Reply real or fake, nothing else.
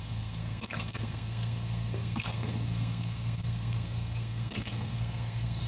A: fake